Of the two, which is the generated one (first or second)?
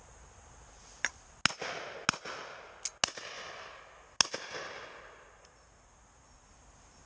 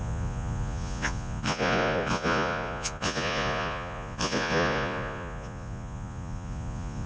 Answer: second